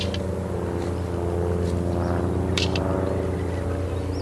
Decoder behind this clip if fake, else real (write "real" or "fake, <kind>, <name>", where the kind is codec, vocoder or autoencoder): real